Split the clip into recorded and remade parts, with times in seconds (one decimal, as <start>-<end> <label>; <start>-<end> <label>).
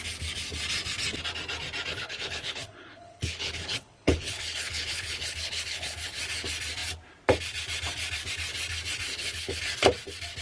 0.0-1.9 recorded; 1.9-6.2 remade; 6.2-9.1 recorded; 9.1-9.6 remade; 9.6-10.4 recorded